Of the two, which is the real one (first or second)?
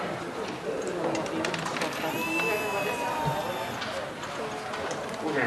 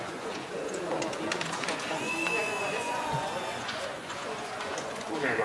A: first